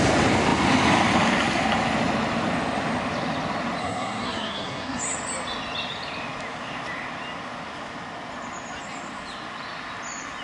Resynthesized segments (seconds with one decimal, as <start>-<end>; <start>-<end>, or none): 3.8-5.0

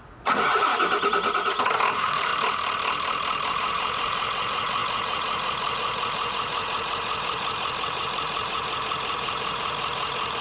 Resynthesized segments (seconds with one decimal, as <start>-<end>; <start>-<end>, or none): 0.0-0.7; 1.9-2.3; 3.5-10.4

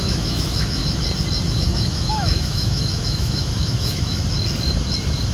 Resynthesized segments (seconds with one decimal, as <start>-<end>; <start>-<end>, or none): 0.0-0.8; 1.5-4.2

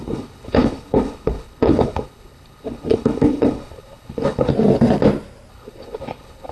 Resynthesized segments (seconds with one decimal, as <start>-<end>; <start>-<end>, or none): 0.0-4.5; 5.5-6.5

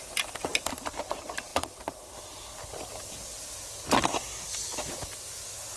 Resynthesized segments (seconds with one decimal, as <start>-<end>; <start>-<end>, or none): none

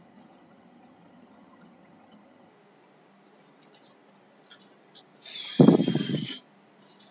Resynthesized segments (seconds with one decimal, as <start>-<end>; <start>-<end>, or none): 0.0-2.5

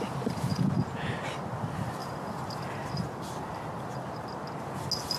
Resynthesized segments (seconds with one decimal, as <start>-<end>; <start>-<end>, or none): 0.5-1.1

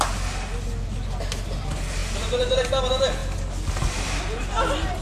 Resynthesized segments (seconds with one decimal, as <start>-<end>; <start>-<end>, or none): none